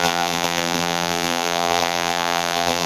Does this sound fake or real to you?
fake